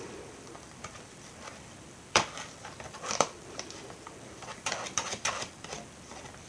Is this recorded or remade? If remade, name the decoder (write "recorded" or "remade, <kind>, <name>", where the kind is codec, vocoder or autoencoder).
remade, vocoder, BigVGAN v2